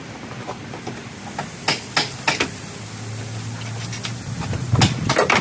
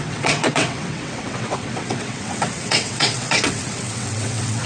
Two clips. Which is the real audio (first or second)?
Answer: first